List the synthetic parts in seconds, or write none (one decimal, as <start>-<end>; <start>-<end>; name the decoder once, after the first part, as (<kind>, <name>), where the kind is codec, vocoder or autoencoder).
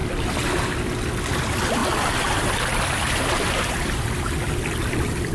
1.8-5.3 (vocoder, BigVGAN v2)